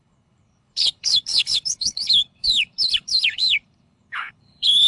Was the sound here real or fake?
fake